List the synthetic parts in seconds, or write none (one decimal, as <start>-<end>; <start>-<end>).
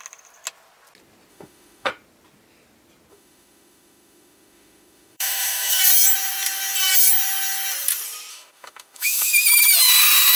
1.3-1.9; 3.1-5.8; 8.3-9.3